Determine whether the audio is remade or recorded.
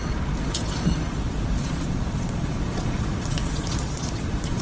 remade